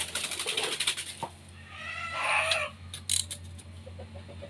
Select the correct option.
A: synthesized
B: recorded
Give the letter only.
B